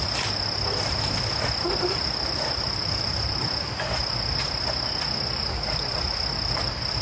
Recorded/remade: recorded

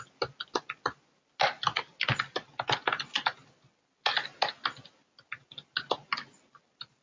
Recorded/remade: recorded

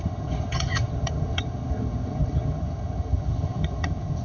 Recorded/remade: remade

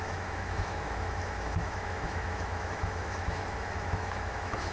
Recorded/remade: remade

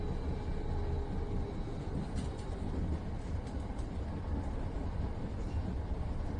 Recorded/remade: recorded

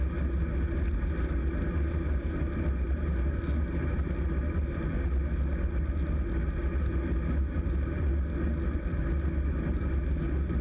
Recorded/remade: recorded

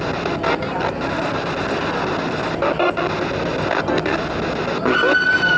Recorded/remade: recorded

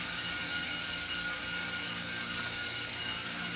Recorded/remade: remade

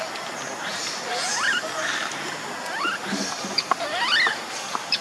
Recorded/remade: recorded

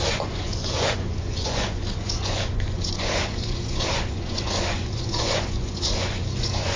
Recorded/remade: remade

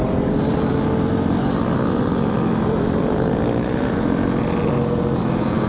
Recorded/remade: recorded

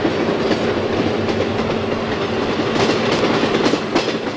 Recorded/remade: recorded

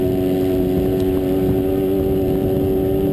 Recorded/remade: recorded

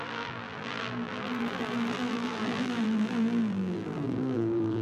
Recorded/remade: remade